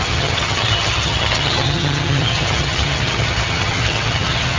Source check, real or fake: fake